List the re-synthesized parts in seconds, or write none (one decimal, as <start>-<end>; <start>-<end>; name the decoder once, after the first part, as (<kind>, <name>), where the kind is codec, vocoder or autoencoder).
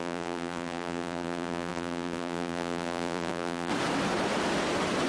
0.0-3.7 (vocoder, BigVGAN v2)